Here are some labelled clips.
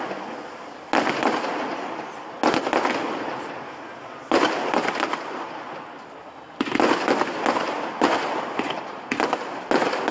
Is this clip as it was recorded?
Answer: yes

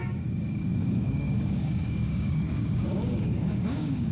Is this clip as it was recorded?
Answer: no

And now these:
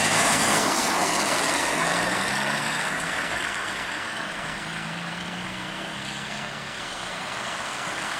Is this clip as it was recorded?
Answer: no